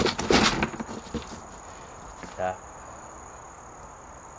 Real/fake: real